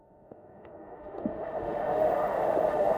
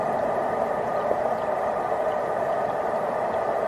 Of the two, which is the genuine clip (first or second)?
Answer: second